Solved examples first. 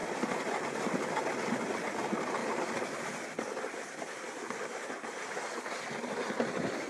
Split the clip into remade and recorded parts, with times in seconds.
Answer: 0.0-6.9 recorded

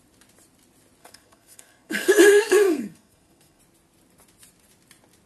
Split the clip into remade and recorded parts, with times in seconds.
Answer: 0.0-1.0 recorded; 1.0-3.6 remade; 3.6-5.3 recorded

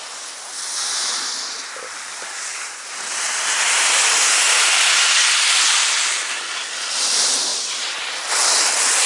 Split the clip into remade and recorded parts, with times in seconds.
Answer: 0.0-2.5 recorded; 2.5-3.0 remade; 3.0-7.5 recorded; 7.5-8.3 remade; 8.3-9.1 recorded